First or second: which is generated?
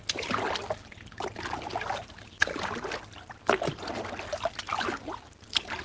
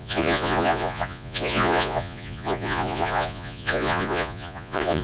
second